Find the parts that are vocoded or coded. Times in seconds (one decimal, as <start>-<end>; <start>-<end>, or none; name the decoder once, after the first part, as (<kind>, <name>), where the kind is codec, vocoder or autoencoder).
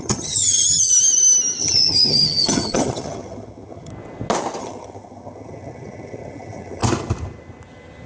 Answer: 0.0-0.9 (vocoder, HiFi-GAN); 1.6-3.9; 4.6-6.8